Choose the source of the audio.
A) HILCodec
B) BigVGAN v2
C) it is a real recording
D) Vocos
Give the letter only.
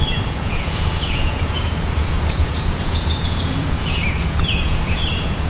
D